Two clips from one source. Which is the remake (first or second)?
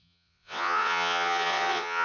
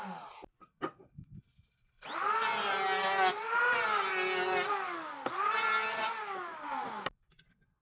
first